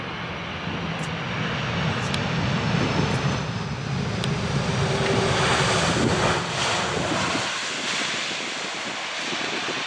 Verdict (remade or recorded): recorded